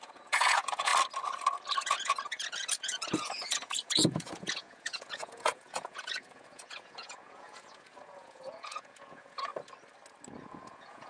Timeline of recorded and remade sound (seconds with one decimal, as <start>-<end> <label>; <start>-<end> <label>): 0.0-0.9 remade; 0.9-1.8 recorded; 1.8-9.5 remade; 9.5-10.4 recorded; 10.4-11.1 remade